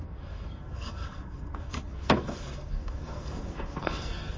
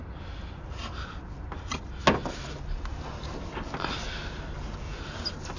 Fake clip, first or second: first